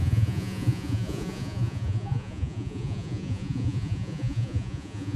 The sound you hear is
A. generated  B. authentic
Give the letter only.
A